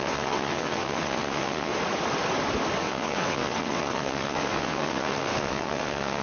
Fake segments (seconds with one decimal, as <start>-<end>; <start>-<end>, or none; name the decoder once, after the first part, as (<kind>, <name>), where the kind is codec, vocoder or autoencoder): 0.0-1.7 (vocoder, WaveNeXt); 2.8-6.2